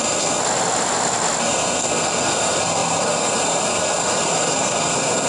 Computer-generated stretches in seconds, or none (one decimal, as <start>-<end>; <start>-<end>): 0.0-0.4; 1.4-5.3